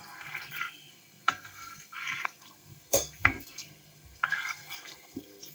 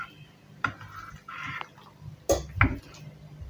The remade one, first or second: first